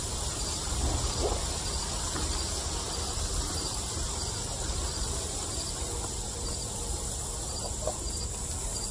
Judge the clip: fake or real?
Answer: real